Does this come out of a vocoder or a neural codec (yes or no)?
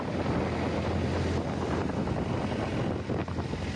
no